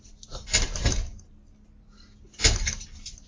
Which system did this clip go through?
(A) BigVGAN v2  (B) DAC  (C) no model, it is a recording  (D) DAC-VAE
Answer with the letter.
C